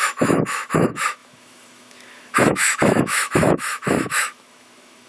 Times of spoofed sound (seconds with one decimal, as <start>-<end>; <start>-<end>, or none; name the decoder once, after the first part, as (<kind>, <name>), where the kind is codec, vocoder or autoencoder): 0.0-5.1 (autoencoder, DAC-VAE)